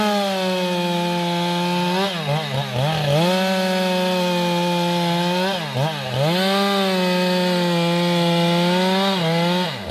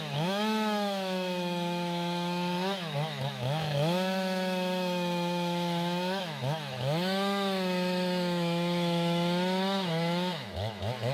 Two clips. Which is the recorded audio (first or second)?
first